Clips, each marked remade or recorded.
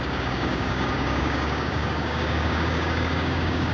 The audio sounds remade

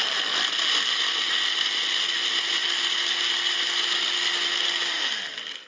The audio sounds recorded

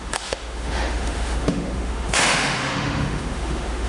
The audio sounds remade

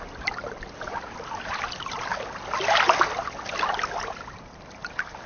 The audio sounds recorded